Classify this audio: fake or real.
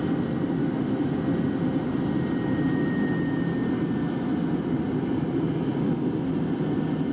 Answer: real